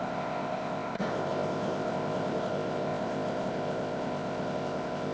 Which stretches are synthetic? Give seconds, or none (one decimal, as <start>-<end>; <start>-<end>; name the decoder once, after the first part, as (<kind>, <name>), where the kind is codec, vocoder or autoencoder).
0.0-5.1 (codec, ZipCodec)